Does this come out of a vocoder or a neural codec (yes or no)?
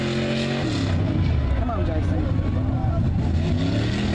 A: no